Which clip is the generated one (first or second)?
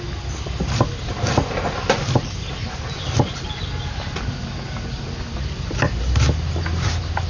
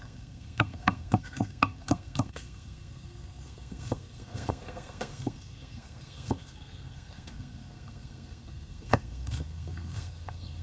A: second